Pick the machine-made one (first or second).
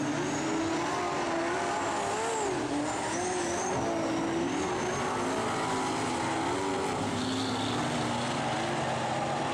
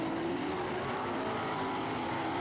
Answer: second